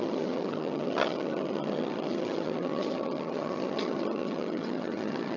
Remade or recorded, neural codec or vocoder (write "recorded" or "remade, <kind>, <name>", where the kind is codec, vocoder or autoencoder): remade, vocoder, HiFi-GAN